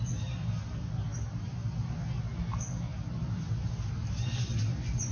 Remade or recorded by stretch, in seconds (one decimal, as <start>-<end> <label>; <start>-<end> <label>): 0.0-5.1 recorded